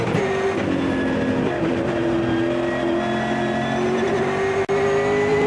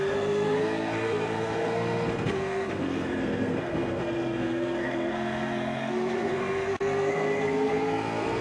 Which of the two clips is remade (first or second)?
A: second